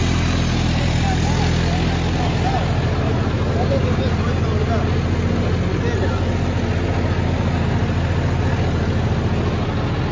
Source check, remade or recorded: recorded